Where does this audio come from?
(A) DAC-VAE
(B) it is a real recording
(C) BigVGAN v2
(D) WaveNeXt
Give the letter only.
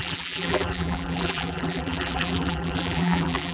C